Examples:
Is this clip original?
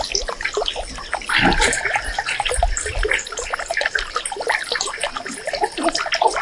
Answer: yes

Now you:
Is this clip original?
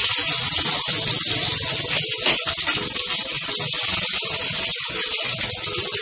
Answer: yes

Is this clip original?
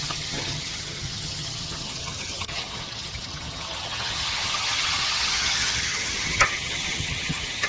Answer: no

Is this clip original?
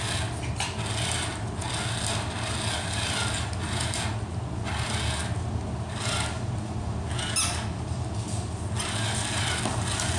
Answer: yes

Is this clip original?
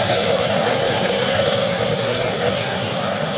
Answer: no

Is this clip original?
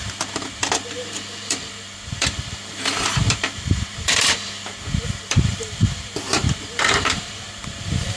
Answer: no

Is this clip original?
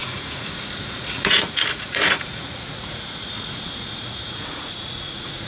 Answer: no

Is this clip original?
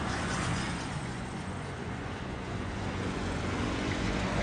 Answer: no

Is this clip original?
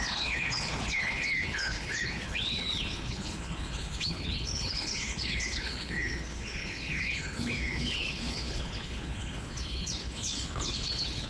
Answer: no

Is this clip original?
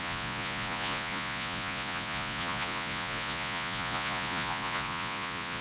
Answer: no